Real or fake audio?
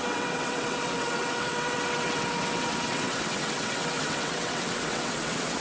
fake